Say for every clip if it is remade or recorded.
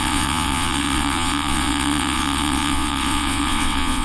remade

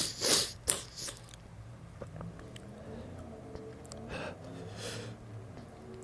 recorded